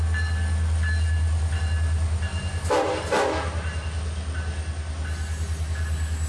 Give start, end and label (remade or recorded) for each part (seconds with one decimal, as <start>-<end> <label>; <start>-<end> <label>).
0.0-6.3 recorded

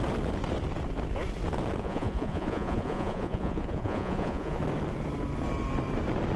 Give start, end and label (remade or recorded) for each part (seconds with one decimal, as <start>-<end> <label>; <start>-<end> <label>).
0.0-1.8 recorded; 1.8-4.6 remade; 4.6-6.4 recorded

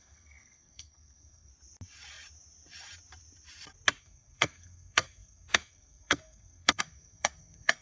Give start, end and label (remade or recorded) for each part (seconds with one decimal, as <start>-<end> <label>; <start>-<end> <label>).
0.0-1.5 remade; 1.5-4.0 recorded; 4.0-7.8 remade

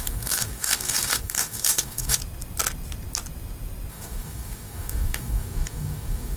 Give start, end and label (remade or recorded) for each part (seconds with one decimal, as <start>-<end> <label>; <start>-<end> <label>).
0.0-2.2 remade; 2.2-3.9 recorded; 3.9-6.4 remade

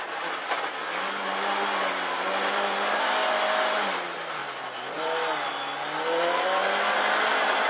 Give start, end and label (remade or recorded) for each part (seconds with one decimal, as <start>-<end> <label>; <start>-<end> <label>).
0.0-7.7 recorded